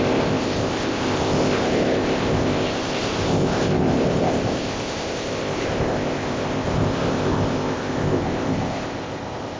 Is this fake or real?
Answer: fake